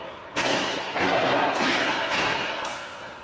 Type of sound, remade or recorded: remade